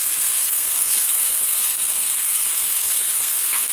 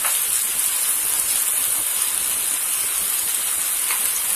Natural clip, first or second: second